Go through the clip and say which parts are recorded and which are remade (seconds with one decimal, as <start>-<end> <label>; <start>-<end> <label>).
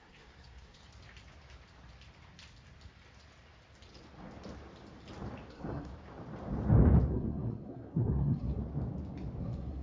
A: 0.0-0.8 remade; 0.8-5.5 recorded; 5.5-5.9 remade; 5.9-7.1 recorded; 7.1-8.6 remade; 8.6-9.4 recorded; 9.4-9.8 remade